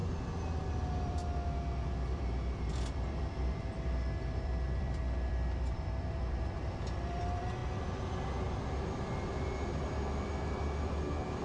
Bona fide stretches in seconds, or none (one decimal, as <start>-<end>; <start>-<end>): 0.0-0.7; 1.2-2.7; 7.6-11.4